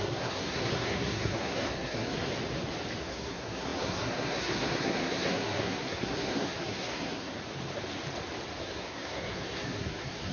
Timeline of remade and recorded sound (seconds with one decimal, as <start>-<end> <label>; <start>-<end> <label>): 0.0-2.3 remade; 2.3-3.0 recorded; 3.0-7.3 remade; 7.3-8.6 recorded; 8.6-10.3 remade